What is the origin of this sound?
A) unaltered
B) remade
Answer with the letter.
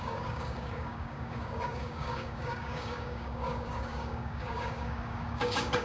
B